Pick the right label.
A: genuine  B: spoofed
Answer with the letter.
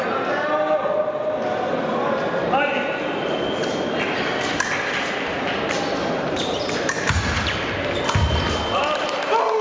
A